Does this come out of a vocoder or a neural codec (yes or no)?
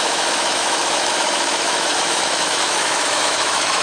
yes